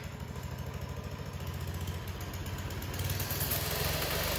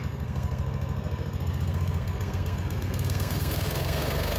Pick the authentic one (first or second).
first